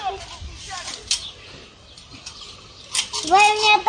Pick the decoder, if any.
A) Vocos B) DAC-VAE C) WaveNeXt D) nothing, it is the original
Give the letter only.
D